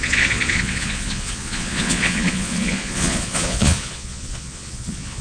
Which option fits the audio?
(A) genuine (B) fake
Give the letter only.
B